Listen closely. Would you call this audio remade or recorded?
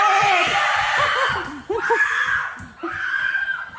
recorded